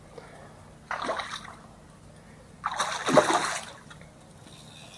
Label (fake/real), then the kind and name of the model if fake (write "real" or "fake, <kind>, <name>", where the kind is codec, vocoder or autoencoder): real